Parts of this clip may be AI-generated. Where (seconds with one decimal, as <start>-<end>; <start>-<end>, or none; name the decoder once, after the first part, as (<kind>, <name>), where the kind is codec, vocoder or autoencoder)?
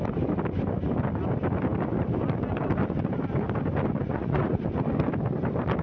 4.0-4.6 (vocoder, Vocos)